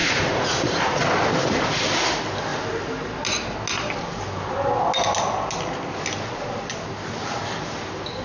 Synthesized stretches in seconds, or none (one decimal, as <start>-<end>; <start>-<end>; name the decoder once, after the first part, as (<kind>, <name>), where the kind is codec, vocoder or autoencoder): 0.0-1.0 (vocoder, Vocos)